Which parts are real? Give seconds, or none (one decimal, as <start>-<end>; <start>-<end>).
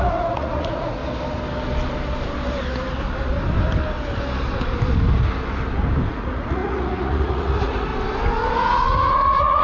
1.0-6.1; 7.9-8.5